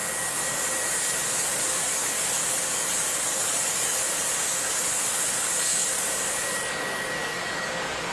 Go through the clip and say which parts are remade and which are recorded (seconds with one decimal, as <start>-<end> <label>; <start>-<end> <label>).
0.0-8.1 remade